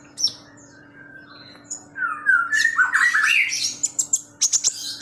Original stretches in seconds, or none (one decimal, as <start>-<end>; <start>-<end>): 1.9-5.0